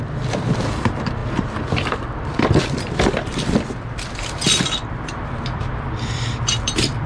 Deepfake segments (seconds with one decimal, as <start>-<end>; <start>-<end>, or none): 0.0-7.1